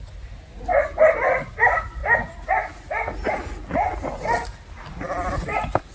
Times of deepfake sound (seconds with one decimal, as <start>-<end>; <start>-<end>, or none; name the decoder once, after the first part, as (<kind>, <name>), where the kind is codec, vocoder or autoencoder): none